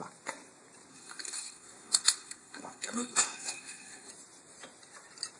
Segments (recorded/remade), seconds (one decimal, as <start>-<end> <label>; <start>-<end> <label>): 0.0-0.9 recorded; 0.9-4.1 remade; 4.1-5.4 recorded